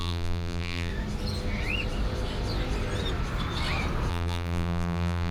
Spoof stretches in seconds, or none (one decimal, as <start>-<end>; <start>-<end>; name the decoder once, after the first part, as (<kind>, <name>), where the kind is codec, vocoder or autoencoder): 0.0-0.9 (vocoder, BigVGAN v2); 4.1-5.3